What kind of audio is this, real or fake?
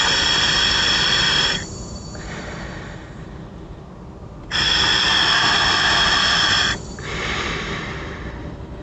fake